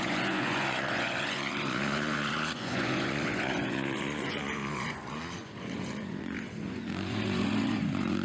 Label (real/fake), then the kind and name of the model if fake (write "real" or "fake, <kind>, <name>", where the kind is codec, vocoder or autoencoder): fake, vocoder, Vocos